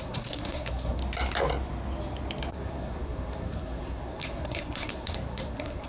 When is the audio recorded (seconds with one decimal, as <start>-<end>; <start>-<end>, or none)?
1.0-2.5